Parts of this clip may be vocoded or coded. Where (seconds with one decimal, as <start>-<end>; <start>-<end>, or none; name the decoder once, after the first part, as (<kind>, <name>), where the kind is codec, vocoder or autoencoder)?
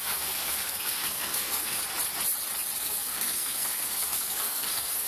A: 0.0-1.8 (codec, SNAC); 2.8-5.1